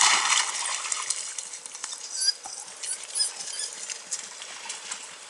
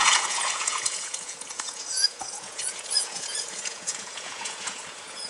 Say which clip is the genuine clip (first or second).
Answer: first